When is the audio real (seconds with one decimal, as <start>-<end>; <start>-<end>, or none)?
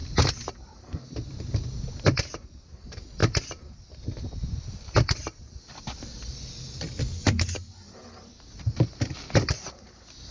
0.0-10.3